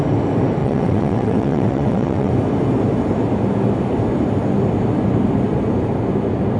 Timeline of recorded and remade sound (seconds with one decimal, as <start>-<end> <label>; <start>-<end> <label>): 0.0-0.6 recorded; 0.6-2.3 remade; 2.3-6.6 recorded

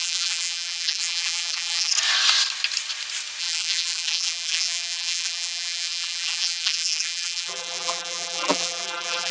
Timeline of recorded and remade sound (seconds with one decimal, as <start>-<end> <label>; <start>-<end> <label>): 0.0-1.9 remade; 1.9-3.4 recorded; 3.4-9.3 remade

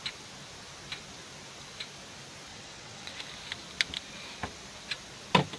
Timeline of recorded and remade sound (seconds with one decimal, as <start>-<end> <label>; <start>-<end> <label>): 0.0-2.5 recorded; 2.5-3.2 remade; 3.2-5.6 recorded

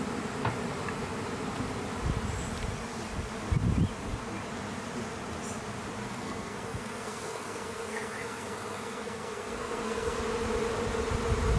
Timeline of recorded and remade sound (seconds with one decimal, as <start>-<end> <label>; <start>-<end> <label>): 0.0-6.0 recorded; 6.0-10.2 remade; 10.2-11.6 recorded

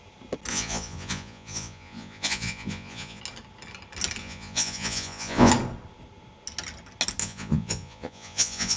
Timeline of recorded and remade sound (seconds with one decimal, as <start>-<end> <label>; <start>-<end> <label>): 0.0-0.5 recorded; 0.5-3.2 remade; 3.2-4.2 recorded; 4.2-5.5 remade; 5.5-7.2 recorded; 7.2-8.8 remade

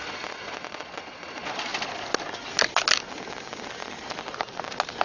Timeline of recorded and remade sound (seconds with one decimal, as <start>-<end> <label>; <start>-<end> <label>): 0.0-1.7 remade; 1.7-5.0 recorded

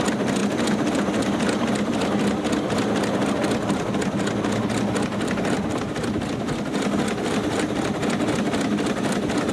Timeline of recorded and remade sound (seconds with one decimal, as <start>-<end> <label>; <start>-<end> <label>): 0.0-9.5 recorded

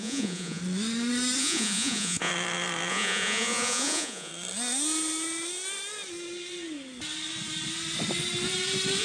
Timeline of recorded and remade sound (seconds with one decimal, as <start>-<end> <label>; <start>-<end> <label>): 0.0-0.6 remade; 0.6-1.4 recorded; 1.4-2.3 remade; 2.3-2.9 recorded; 2.9-4.3 remade; 4.3-9.0 recorded